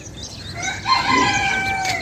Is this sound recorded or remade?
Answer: recorded